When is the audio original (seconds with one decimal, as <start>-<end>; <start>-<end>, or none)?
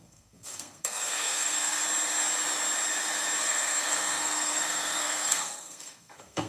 1.8-3.4